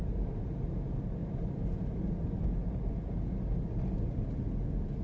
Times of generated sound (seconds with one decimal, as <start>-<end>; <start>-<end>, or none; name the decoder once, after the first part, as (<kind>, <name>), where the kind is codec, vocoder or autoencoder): none